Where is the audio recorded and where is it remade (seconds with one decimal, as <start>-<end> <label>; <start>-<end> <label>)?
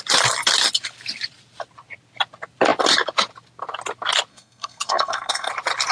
0.0-4.3 recorded; 4.3-5.5 remade; 5.5-5.9 recorded